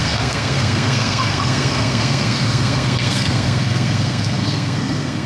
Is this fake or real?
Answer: fake